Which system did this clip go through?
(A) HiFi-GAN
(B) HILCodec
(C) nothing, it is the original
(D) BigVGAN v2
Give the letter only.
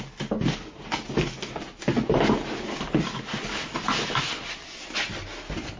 C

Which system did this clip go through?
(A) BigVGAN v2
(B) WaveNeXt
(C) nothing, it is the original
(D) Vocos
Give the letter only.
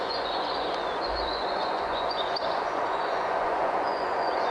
D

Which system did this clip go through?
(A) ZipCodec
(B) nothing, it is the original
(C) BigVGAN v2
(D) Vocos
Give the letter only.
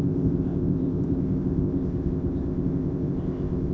A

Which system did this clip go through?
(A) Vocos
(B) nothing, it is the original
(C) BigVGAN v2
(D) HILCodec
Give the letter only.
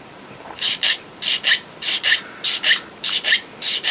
C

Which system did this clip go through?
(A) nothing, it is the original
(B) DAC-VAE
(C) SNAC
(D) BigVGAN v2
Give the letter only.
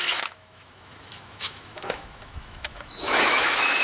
B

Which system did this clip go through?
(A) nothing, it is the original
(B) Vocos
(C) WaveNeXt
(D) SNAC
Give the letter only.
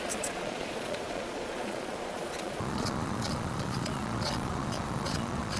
B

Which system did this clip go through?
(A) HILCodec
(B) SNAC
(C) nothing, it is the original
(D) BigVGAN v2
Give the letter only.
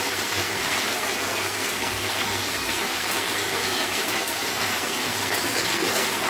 B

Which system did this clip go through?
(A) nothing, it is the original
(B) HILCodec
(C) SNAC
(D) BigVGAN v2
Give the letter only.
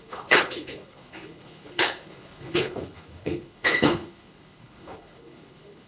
B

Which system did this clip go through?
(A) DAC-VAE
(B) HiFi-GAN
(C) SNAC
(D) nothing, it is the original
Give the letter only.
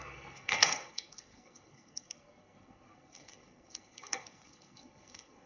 C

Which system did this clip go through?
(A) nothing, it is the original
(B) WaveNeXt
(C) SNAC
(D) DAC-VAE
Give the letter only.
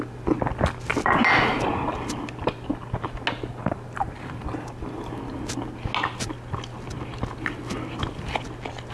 A